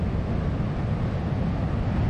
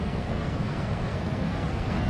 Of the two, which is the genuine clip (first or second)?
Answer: first